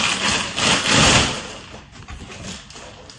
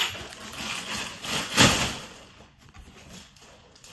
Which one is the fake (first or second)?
second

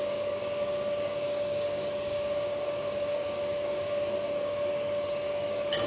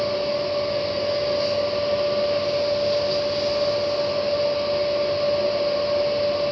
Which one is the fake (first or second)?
first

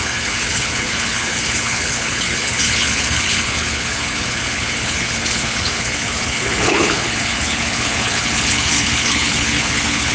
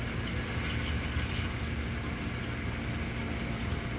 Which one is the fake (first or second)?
first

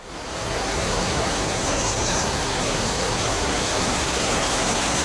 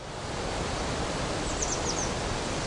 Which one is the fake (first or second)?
first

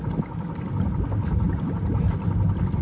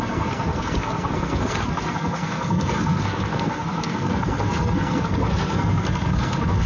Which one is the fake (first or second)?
second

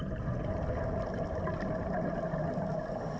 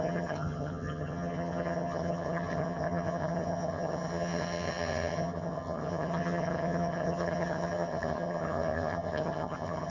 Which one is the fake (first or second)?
second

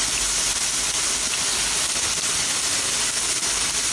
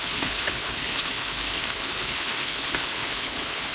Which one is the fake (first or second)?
second